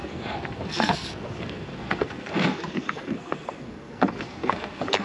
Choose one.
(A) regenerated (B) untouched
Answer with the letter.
A